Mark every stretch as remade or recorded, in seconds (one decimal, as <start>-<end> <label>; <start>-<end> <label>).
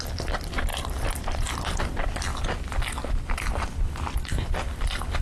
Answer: 0.0-2.3 remade; 2.3-3.5 recorded; 3.5-5.2 remade